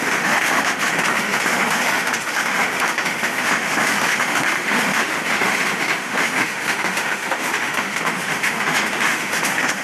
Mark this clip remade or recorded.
remade